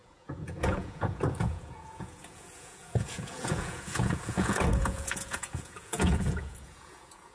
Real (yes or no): no